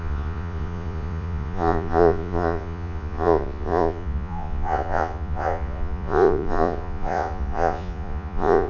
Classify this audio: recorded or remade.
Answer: remade